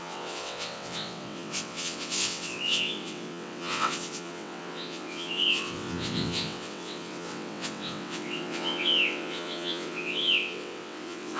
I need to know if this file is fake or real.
fake